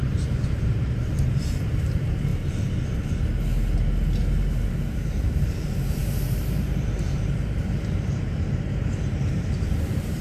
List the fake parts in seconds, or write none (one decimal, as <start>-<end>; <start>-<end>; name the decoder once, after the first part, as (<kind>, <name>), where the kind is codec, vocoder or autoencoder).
0.0-2.3 (vocoder, BigVGAN v2); 4.7-10.2